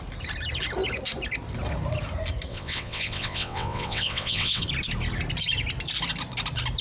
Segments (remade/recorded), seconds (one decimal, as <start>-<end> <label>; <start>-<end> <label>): 0.0-2.5 recorded; 2.5-4.6 remade; 4.6-6.8 recorded